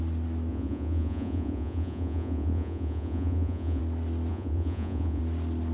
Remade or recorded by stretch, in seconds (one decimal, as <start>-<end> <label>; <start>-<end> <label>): 0.0-0.5 recorded; 0.5-3.8 remade; 3.8-4.3 recorded; 4.3-5.2 remade; 5.2-5.7 recorded